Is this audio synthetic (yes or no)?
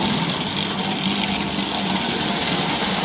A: no